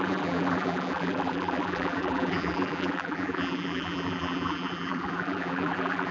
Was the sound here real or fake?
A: fake